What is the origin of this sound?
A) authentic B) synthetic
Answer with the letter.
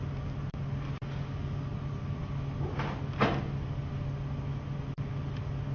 A